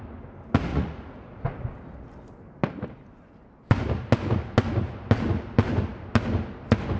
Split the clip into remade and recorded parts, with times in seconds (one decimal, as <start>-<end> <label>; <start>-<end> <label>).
0.0-0.7 recorded; 0.7-1.4 remade; 1.4-7.0 recorded